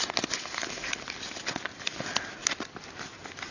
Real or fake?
real